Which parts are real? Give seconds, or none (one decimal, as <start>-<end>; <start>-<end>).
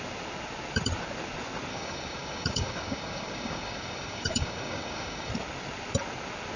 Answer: 0.0-1.7; 5.3-6.6